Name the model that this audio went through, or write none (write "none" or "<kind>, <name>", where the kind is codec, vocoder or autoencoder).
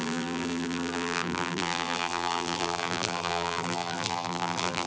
vocoder, BigVGAN v2